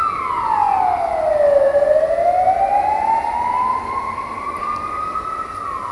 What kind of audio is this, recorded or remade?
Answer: recorded